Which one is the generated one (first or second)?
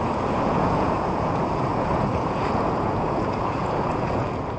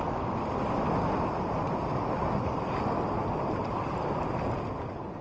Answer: first